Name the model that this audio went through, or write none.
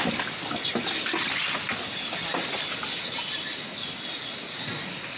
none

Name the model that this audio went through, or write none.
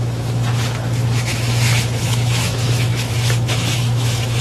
autoencoder, DAC-VAE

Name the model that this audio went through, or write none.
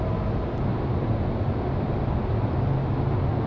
none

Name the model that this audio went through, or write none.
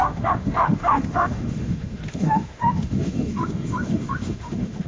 autoencoder, DAC-VAE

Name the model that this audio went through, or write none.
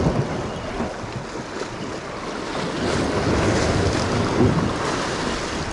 none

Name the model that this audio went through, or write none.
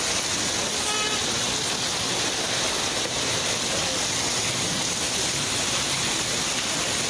none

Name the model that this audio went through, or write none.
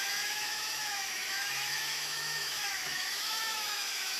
autoencoder, DAC-VAE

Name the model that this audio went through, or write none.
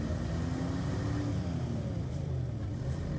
none